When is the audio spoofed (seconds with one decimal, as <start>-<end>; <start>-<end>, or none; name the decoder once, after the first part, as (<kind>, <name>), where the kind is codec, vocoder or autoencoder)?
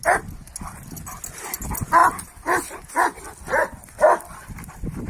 none